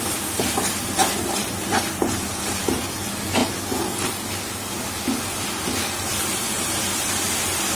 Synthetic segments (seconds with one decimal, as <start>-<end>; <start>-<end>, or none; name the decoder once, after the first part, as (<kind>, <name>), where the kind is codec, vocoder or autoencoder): none